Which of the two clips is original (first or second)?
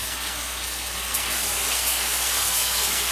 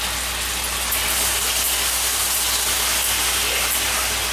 second